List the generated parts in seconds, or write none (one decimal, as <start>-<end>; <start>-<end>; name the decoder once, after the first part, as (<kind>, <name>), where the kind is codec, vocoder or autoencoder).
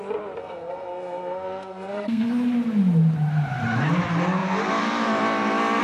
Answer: 0.4-2.3 (codec, SNAC)